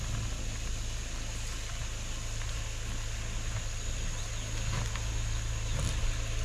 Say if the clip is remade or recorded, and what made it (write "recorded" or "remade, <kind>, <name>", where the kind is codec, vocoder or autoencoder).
recorded